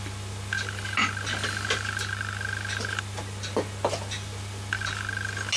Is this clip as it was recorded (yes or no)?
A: yes